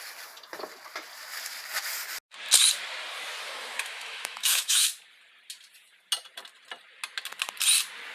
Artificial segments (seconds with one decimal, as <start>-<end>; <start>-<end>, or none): 3.6-4.9